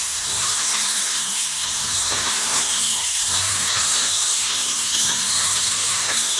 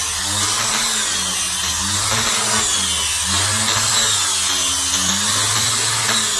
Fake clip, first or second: first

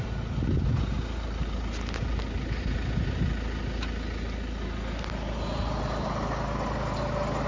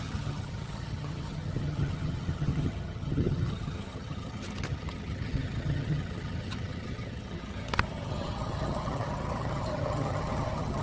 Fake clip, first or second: second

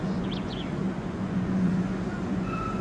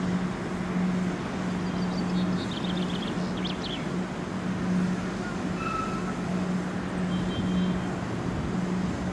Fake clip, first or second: first